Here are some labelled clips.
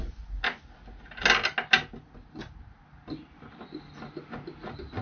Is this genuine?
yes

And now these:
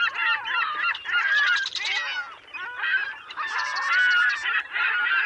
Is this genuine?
yes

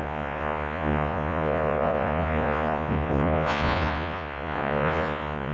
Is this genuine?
no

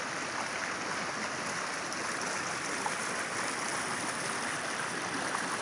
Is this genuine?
yes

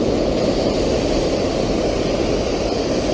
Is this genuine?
yes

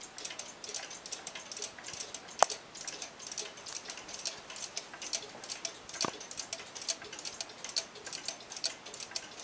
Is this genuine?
yes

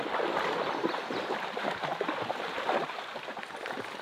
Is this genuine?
yes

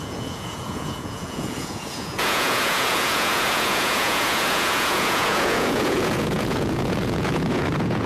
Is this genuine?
no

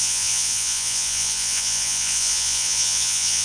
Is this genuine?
no